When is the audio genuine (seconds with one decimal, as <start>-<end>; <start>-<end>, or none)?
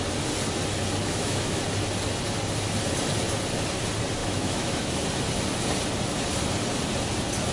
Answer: 0.0-1.0; 1.6-4.2; 4.9-7.5